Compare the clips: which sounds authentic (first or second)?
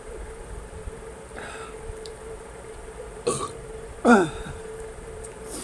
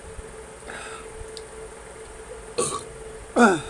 second